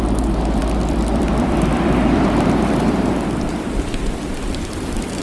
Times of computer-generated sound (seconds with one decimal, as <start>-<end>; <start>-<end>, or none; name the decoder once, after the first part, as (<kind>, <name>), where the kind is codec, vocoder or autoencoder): 0.6-3.7 (vocoder, BigVGAN v2)